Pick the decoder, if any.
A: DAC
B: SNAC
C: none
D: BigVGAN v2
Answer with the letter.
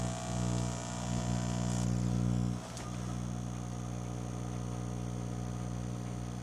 C